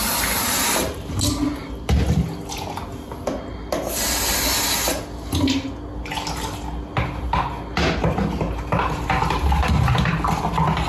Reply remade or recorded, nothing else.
recorded